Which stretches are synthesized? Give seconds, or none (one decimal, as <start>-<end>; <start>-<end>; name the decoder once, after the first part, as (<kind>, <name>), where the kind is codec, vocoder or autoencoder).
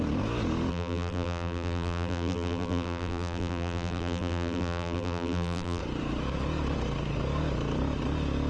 0.7-5.8 (vocoder, BigVGAN v2)